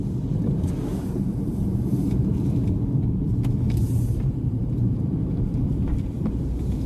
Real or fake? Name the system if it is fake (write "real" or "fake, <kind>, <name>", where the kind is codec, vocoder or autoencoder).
fake, vocoder, BigVGAN v2